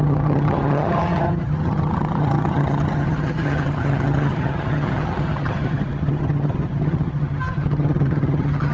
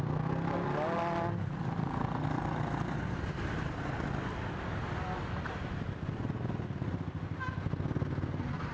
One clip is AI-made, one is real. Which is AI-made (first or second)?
first